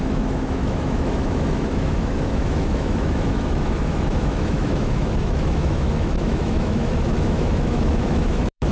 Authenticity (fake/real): fake